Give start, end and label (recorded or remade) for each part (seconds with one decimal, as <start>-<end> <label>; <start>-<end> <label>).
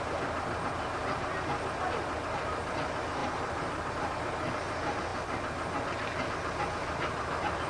0.0-3.2 recorded; 3.2-3.9 remade; 3.9-7.7 recorded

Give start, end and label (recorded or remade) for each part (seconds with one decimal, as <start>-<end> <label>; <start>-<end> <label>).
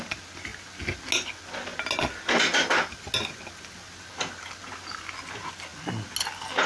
0.0-6.7 recorded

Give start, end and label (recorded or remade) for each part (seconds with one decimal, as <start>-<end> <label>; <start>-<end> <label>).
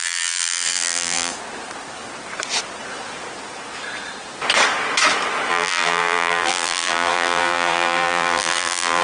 0.0-1.3 remade; 1.3-5.5 recorded; 5.5-9.0 remade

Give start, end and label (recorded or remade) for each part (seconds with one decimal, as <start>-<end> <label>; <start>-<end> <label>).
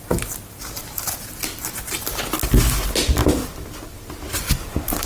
0.0-2.4 remade; 2.4-5.1 recorded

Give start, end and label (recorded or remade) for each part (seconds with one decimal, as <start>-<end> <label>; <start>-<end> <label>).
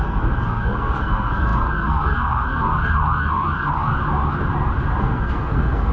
0.0-3.9 remade; 3.9-5.0 recorded; 5.0-5.9 remade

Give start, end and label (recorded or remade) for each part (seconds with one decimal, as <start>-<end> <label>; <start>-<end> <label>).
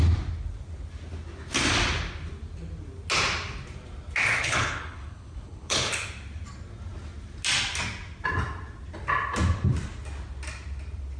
0.0-4.4 recorded; 4.4-5.9 remade; 5.9-11.2 recorded